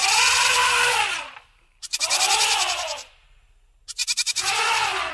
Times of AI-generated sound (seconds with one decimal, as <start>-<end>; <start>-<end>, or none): 0.0-3.1; 4.0-5.1